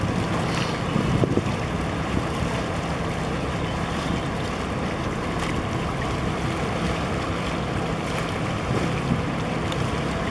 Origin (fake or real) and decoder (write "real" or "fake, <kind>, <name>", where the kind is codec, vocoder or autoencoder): real